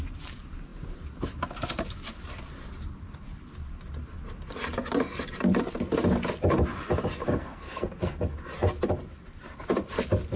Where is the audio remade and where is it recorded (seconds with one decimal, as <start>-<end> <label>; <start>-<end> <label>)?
0.0-7.2 recorded; 7.2-8.3 remade; 8.3-10.4 recorded